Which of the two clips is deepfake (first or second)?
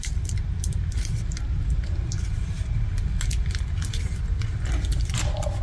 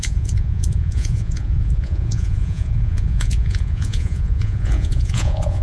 second